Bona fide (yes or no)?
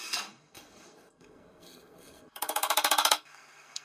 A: no